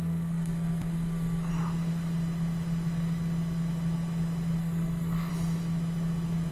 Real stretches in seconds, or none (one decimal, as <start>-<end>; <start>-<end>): 1.5-4.6; 5.3-6.5